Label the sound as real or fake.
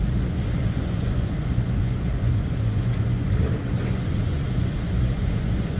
fake